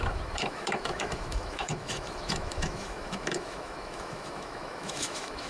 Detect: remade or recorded remade